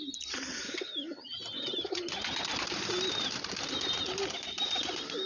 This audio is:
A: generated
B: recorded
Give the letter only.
B